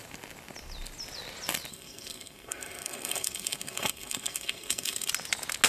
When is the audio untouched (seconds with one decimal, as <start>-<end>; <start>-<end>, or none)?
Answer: 0.0-1.7; 5.1-5.7